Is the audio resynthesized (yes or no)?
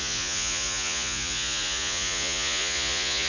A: yes